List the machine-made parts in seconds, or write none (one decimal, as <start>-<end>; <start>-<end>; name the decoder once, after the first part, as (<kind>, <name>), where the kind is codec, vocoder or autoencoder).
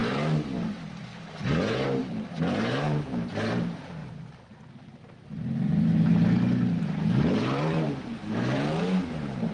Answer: 1.4-4.0 (vocoder, BigVGAN v2); 4.7-6.1; 6.8-9.5